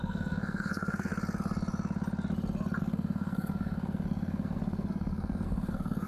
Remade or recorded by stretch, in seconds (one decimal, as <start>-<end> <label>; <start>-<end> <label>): 0.0-1.1 remade; 1.1-2.8 recorded; 2.8-6.1 remade